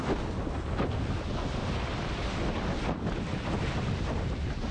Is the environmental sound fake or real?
real